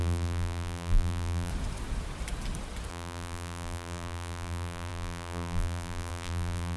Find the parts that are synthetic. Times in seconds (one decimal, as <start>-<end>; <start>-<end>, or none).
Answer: 0.0-1.5; 2.9-6.8